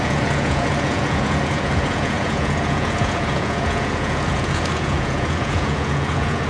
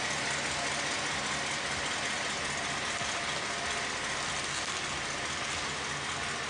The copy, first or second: first